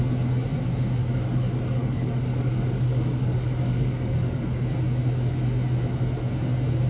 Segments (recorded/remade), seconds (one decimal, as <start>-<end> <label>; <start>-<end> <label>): 0.0-1.0 recorded; 1.0-4.7 remade; 4.7-6.9 recorded